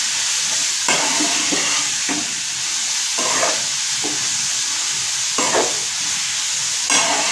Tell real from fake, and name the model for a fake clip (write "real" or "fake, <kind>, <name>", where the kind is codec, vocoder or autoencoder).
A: real